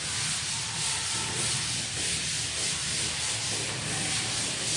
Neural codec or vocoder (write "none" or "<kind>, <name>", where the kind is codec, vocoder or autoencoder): none